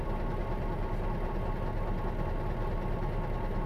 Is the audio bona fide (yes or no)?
yes